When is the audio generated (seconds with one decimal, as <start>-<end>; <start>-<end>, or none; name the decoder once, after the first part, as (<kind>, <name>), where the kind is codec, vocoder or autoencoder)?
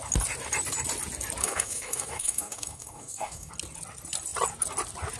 1.4-3.5 (codec, DAC)